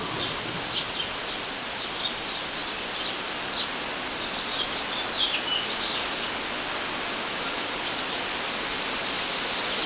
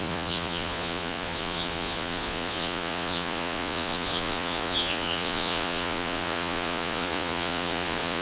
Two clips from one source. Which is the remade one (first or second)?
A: second